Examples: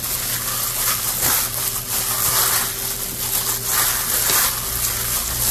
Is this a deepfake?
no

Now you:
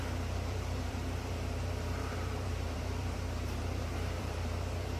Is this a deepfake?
yes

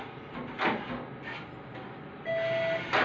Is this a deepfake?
no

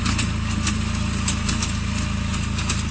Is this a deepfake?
no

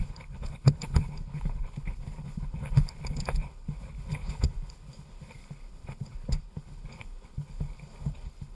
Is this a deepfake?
yes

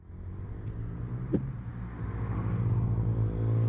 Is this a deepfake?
no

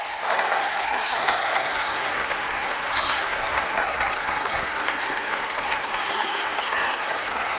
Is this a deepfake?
yes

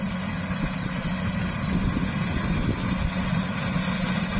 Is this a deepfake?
no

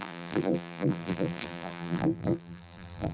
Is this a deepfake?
yes